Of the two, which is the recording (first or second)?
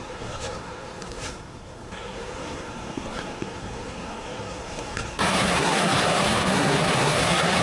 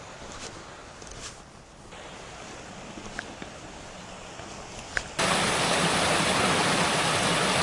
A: second